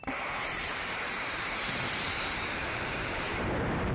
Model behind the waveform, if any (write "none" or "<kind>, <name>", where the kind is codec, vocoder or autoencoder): vocoder, BigVGAN v2